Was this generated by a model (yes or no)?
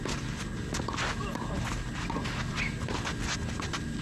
no